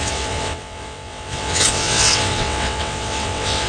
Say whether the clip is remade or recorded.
remade